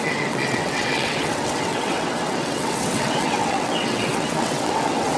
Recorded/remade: remade